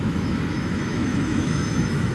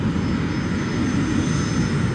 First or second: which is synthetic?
first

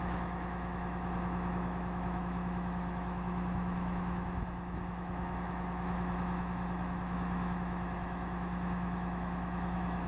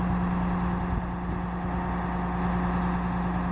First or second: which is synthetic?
first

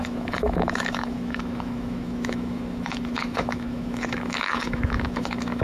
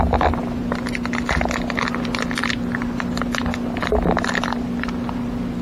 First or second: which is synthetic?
first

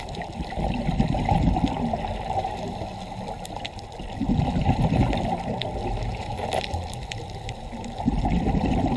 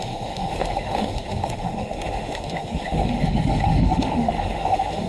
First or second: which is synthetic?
second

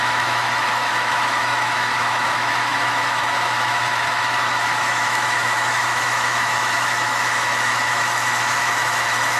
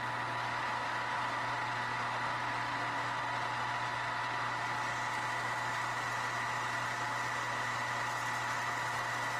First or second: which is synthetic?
first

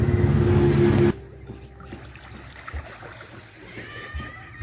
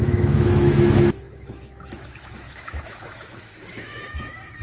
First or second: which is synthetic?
second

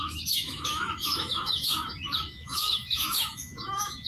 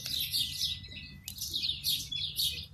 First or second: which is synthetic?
first